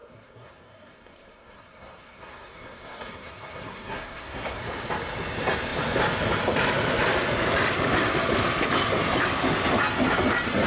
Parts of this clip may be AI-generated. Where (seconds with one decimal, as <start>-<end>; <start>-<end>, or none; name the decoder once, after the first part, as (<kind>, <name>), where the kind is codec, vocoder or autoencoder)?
0.0-4.6 (codec, SNAC)